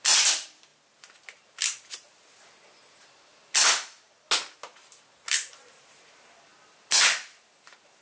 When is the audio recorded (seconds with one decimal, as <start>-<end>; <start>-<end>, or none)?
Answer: 0.0-8.0